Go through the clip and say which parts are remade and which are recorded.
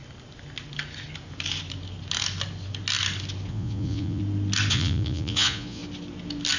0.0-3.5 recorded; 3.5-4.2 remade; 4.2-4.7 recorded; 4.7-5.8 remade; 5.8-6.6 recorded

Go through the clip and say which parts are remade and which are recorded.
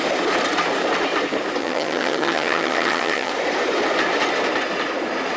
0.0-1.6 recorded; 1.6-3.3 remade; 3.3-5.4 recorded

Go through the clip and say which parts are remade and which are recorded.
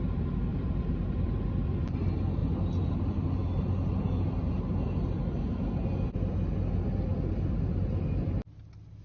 0.0-0.5 recorded; 0.5-1.4 remade; 1.4-9.0 recorded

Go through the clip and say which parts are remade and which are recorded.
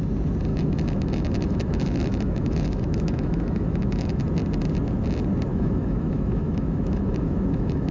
0.0-0.5 recorded; 0.5-4.2 remade; 4.2-5.5 recorded; 5.5-7.9 remade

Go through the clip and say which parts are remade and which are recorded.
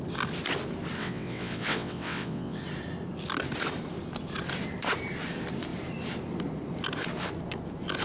0.0-1.0 recorded; 1.0-2.6 remade; 2.6-8.0 recorded